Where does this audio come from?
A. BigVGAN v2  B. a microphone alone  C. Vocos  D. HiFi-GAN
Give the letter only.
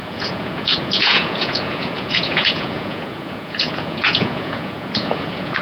C